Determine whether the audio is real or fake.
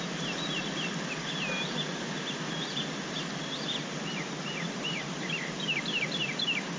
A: real